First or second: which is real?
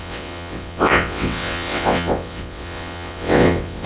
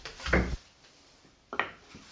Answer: second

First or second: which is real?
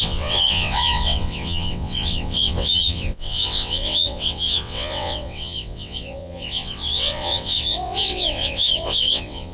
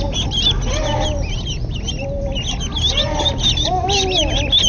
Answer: second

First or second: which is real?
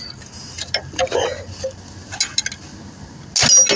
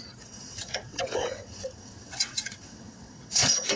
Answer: first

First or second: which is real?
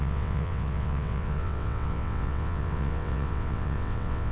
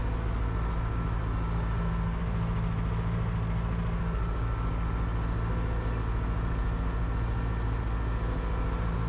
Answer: second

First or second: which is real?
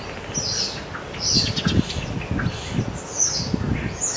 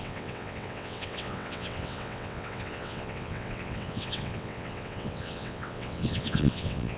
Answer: first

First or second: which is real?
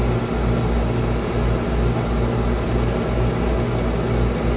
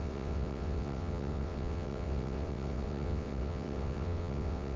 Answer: first